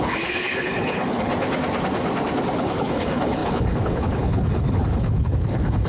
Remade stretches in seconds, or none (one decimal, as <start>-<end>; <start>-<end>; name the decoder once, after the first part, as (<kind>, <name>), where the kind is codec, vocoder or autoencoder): 0.0-1.3 (codec, HILCodec); 2.6-5.9